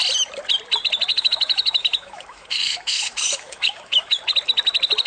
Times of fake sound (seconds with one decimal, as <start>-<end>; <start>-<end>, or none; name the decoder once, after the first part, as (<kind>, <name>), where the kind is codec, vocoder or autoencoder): 1.1-4.2 (autoencoder, DAC-VAE)